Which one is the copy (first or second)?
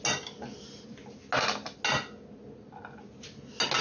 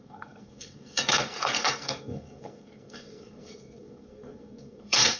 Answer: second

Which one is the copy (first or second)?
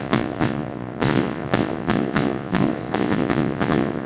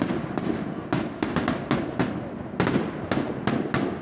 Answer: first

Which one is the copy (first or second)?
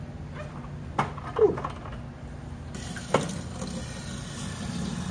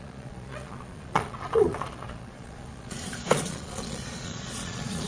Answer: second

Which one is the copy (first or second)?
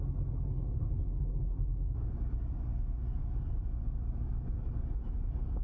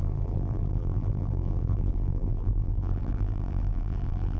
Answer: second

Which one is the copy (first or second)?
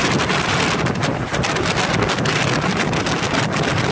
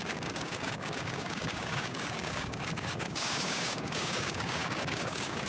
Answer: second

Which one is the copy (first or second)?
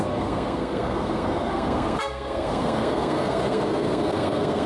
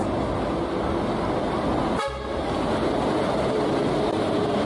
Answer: first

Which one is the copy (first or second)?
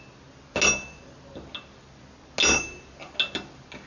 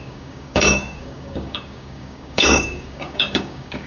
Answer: second